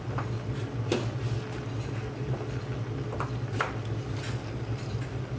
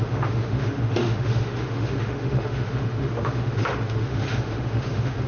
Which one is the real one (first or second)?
first